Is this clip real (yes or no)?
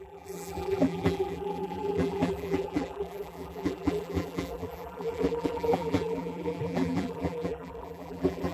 no